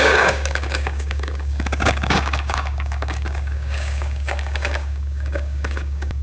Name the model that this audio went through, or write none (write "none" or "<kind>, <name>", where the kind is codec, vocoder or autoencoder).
codec, DAC